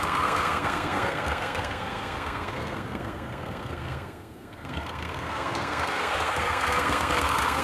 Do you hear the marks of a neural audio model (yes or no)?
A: yes